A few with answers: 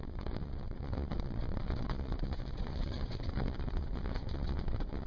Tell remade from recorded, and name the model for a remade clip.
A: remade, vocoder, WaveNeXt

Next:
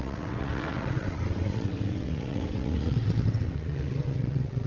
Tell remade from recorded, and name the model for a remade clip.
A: remade, vocoder, WaveNeXt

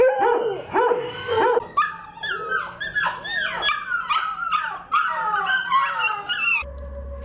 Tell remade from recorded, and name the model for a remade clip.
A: recorded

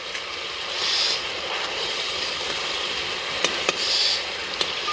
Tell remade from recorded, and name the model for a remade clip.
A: recorded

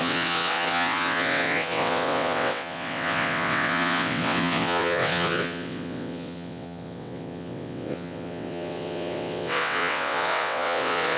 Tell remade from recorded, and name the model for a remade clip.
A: remade, vocoder, WaveNeXt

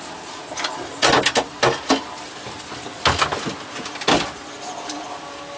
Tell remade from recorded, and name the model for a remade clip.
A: recorded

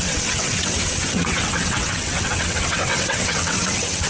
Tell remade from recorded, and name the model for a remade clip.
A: remade, vocoder, WaveNeXt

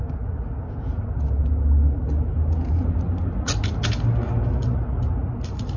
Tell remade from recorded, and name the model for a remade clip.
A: recorded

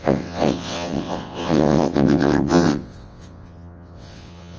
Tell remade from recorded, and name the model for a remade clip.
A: remade, vocoder, WaveNeXt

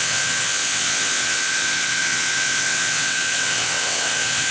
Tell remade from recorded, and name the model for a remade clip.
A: remade, vocoder, WaveNeXt